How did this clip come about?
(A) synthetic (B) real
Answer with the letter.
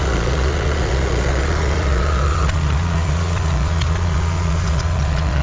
A